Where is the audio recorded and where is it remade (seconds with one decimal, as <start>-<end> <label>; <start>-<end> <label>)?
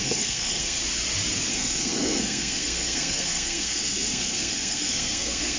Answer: 0.0-0.8 remade; 0.8-1.5 recorded; 1.5-5.6 remade